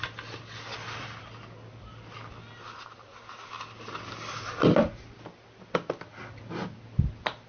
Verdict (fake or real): real